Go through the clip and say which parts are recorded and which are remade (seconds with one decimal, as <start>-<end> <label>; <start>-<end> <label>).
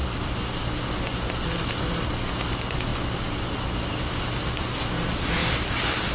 0.0-6.1 recorded